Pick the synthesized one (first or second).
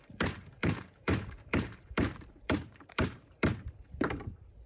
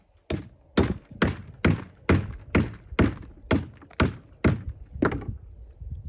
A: first